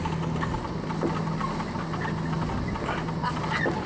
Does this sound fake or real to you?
real